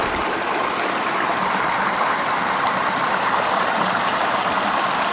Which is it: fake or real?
real